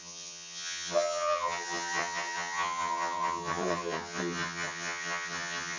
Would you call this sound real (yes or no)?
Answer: no